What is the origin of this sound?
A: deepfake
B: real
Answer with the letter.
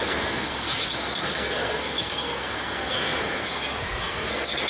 A